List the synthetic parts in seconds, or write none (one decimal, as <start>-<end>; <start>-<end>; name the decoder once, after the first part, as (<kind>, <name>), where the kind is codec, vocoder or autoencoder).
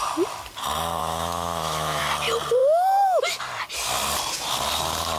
1.0-2.0 (autoencoder, DAC-VAE); 2.6-3.4